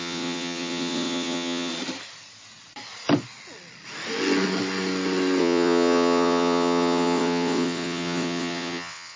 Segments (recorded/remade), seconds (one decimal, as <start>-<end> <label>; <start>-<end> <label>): 0.0-1.7 remade; 1.7-5.4 recorded; 5.4-9.2 remade